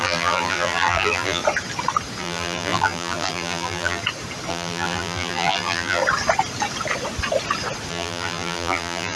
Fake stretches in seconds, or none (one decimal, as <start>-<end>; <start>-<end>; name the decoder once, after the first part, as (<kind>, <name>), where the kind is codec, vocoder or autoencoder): 0.0-1.4 (vocoder, BigVGAN v2); 2.2-4.0; 4.5-6.0; 7.9-9.2